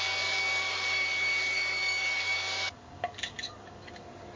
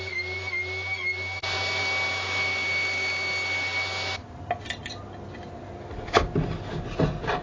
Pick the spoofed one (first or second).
first